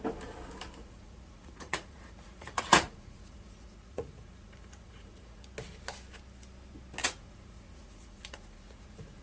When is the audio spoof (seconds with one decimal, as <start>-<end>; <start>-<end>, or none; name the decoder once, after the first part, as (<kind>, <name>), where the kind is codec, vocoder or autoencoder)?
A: 0.8-5.4 (vocoder, Vocos); 7.0-9.2